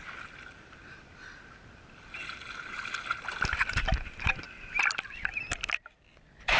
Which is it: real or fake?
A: real